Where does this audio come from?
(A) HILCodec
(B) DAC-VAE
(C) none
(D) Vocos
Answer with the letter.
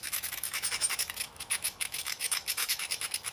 B